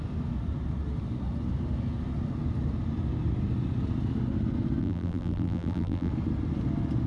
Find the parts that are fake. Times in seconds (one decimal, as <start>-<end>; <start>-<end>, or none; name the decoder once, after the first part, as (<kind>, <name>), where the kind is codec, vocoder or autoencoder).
4.8-6.1 (vocoder, BigVGAN v2)